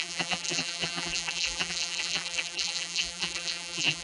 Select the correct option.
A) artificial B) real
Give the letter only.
A